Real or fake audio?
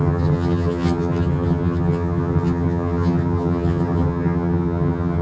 fake